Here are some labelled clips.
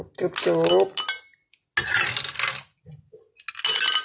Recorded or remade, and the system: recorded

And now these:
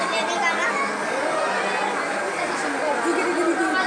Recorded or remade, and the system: recorded